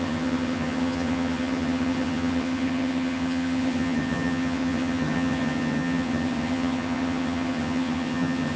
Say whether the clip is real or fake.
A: fake